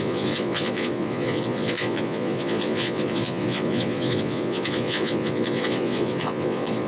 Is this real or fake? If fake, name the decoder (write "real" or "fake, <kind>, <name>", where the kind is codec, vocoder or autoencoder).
fake, vocoder, Vocos